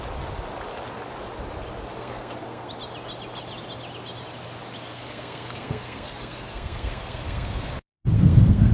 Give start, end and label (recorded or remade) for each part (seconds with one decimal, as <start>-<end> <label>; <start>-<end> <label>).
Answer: 0.0-2.0 recorded; 2.0-2.7 remade; 2.7-4.9 recorded; 4.9-8.7 remade